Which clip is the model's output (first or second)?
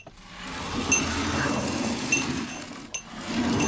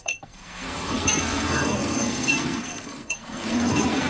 second